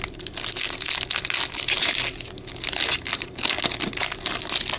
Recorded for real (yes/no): yes